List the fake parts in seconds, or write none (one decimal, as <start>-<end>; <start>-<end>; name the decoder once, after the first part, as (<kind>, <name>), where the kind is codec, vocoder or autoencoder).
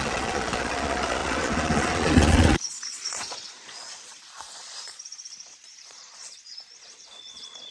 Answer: 0.0-7.7 (vocoder, Vocos)